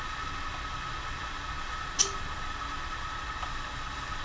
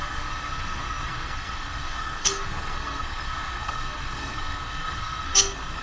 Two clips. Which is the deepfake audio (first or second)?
second